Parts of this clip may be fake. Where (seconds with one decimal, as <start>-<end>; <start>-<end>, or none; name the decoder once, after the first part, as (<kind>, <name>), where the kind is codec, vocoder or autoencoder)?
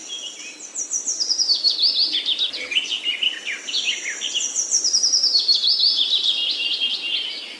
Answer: none